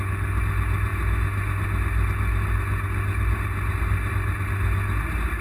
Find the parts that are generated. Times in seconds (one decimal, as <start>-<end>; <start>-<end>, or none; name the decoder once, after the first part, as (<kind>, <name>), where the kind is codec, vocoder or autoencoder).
none